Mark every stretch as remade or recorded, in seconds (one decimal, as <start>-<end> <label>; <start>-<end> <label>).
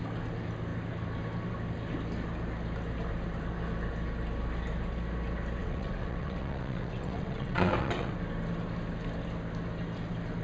0.0-5.6 recorded; 5.6-8.1 remade; 8.1-10.4 recorded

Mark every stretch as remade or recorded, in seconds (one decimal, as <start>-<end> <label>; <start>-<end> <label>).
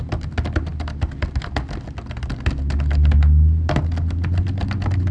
0.0-5.1 recorded